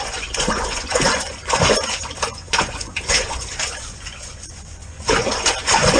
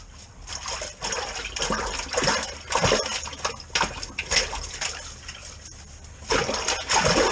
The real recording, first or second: second